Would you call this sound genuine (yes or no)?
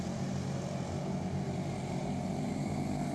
yes